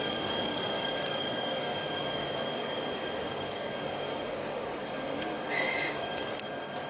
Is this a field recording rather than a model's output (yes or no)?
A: no